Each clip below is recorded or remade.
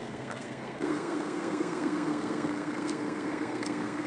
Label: remade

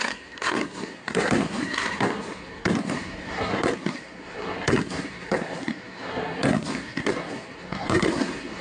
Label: remade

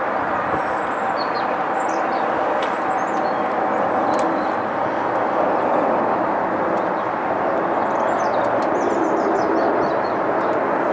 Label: recorded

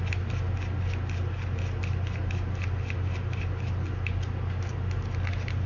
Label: recorded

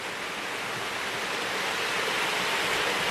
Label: recorded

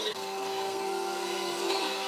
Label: remade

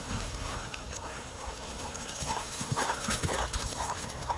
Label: remade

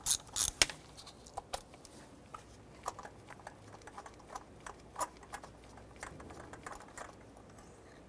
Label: recorded